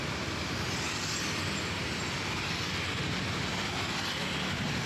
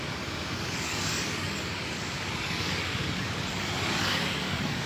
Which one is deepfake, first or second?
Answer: second